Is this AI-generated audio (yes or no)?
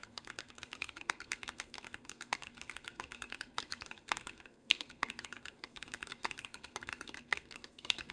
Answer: yes